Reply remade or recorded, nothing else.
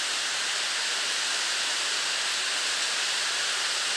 recorded